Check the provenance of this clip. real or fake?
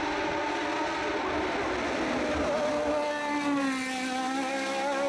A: real